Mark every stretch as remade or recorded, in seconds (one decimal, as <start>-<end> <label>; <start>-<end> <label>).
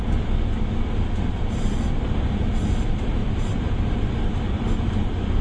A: 0.0-3.2 recorded; 3.2-3.7 remade; 3.7-5.4 recorded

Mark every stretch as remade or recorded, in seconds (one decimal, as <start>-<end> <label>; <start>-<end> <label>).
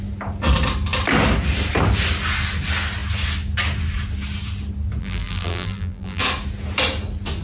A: 0.0-5.0 recorded; 5.0-6.2 remade; 6.2-7.4 recorded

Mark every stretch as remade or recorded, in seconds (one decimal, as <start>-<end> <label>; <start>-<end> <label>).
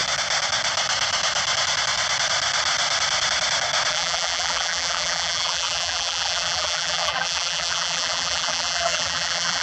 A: 0.0-3.9 recorded; 3.9-9.6 remade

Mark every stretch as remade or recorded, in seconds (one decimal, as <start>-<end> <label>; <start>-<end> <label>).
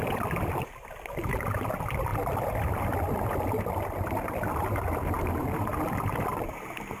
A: 0.0-7.0 recorded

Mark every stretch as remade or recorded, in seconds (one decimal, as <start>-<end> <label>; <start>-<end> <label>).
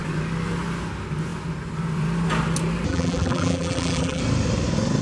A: 0.0-2.9 recorded; 2.9-4.2 remade; 4.2-5.0 recorded